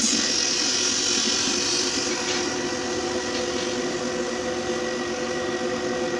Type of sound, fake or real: real